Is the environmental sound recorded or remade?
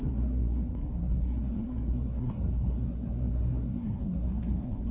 remade